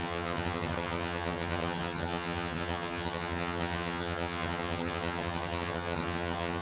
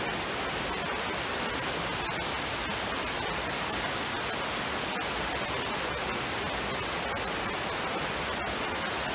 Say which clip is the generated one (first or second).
first